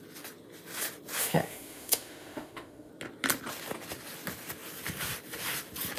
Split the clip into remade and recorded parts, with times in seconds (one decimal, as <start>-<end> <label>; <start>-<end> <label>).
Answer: 0.0-1.2 recorded; 1.2-2.9 remade; 2.9-6.0 recorded